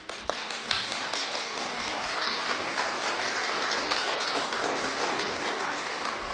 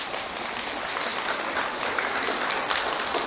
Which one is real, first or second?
second